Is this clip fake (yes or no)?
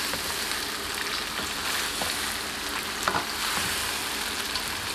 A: no